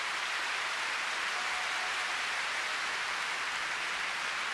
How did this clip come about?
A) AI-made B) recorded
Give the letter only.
B